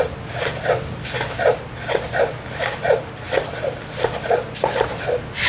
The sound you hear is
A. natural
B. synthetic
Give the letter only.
A